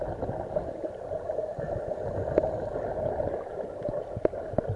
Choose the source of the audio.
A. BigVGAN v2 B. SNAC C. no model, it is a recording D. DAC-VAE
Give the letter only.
C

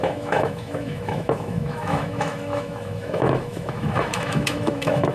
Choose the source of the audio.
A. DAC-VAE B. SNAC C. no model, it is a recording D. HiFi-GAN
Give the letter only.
A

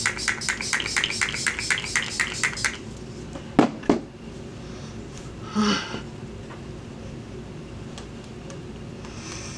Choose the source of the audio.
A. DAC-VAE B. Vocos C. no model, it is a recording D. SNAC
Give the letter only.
C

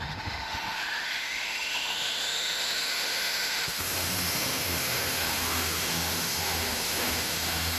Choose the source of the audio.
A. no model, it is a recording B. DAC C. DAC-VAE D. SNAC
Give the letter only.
C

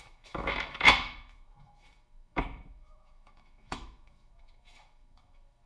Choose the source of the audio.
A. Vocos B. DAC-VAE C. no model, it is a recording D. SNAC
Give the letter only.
B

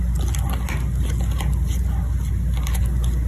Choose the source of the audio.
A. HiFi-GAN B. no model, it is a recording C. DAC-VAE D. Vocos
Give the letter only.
B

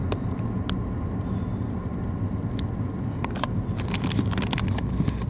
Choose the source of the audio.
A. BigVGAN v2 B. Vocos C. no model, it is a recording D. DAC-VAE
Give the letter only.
C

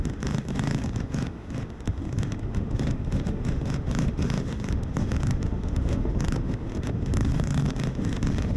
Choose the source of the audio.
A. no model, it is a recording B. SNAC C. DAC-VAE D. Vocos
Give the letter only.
C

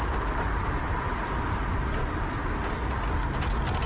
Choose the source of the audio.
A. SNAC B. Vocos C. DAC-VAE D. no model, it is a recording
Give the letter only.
D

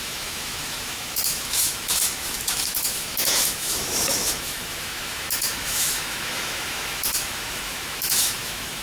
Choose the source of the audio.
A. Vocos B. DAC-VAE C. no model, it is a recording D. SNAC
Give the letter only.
B